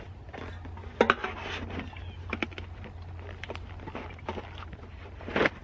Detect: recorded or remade recorded